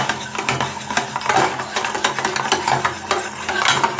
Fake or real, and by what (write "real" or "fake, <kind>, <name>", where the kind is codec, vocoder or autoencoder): real